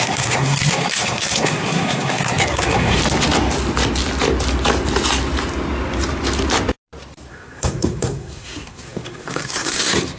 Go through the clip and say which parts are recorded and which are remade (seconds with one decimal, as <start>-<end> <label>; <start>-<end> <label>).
0.0-3.0 remade; 3.0-7.3 recorded; 7.3-10.2 remade